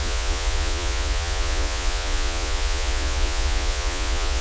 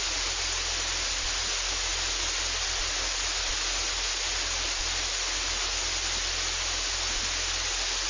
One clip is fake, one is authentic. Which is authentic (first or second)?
second